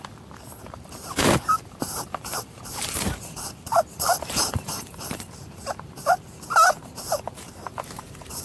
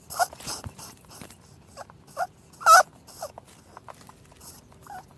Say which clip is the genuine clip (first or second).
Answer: second